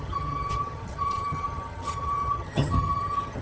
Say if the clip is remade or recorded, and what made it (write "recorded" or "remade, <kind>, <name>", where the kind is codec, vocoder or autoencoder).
remade, vocoder, HiFi-GAN